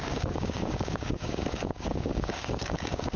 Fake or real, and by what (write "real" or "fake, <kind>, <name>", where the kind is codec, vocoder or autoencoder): fake, codec, DAC